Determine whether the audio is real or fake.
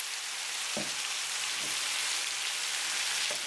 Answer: real